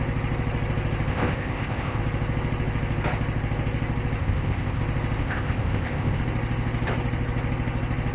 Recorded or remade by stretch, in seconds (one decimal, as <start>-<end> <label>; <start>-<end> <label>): 0.0-1.1 recorded; 1.1-2.0 remade; 2.0-4.2 recorded; 4.2-4.8 remade; 4.8-5.2 recorded; 5.2-6.2 remade; 6.2-8.1 recorded